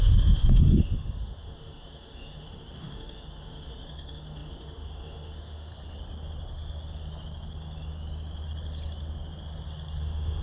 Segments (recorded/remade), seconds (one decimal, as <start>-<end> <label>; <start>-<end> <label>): 0.0-5.7 remade; 5.7-10.0 recorded; 10.0-10.4 remade

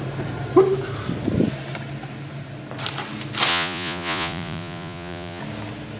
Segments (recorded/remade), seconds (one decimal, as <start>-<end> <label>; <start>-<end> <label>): 0.0-3.5 recorded; 3.5-5.4 remade; 5.4-6.0 recorded

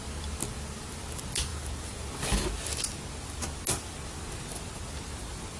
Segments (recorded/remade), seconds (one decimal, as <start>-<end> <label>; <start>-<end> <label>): 0.0-5.6 recorded

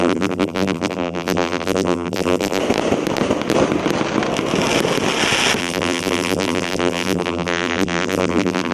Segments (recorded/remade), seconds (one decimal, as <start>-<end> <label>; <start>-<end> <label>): 0.0-2.6 remade; 2.6-5.6 recorded; 5.6-8.7 remade

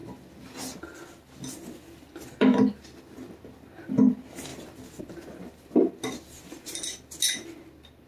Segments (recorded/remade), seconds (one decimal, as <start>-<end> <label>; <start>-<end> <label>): 0.0-8.1 recorded

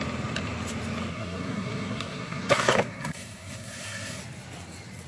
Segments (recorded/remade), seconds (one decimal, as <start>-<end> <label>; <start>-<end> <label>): 0.0-1.1 recorded; 1.1-4.2 remade; 4.2-5.1 recorded

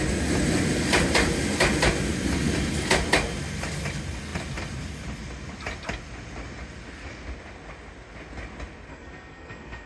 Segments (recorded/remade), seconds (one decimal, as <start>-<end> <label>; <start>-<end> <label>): 0.0-8.9 recorded; 8.9-9.9 remade